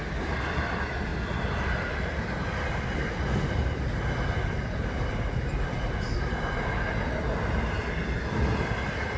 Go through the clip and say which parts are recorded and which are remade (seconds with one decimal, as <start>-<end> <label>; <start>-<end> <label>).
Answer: 0.0-9.2 recorded